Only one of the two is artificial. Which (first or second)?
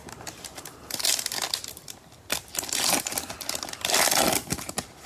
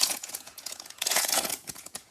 second